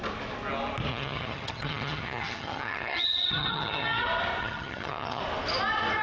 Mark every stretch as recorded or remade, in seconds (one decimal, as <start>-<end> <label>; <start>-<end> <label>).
0.0-0.9 recorded; 0.9-4.0 remade; 4.0-4.4 recorded; 4.4-5.2 remade; 5.2-6.0 recorded